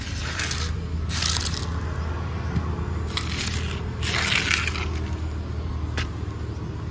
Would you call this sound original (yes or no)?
yes